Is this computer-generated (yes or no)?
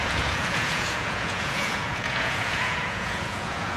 yes